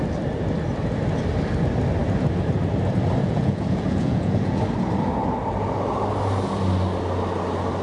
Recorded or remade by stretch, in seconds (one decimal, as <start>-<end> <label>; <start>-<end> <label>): 0.0-3.2 recorded; 3.2-4.6 remade; 4.6-7.8 recorded